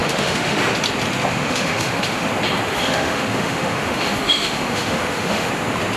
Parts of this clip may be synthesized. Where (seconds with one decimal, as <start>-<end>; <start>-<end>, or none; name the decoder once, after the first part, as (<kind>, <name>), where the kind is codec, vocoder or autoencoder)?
0.0-0.6 (autoencoder, DAC-VAE); 1.3-2.3; 2.7-5.5